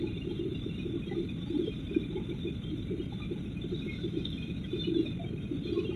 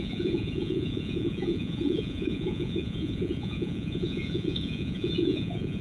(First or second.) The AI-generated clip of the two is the second